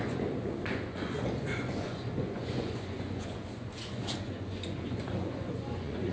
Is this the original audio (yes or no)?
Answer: no